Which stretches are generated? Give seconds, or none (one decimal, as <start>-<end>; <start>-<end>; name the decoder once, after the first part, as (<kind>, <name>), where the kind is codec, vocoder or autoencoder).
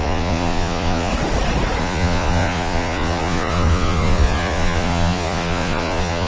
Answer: 0.0-1.1 (vocoder, Vocos); 1.8-6.3